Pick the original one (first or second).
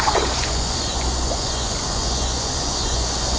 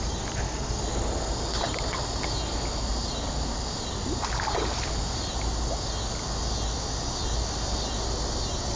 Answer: second